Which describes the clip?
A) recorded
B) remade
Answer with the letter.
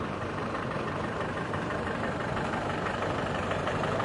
B